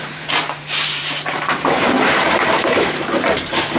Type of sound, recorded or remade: remade